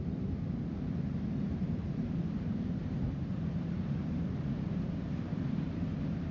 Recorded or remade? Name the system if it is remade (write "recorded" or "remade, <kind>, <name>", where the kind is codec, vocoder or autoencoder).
remade, vocoder, BigVGAN v2